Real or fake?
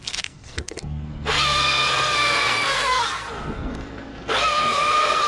fake